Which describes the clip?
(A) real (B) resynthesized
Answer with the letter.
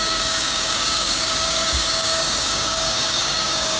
B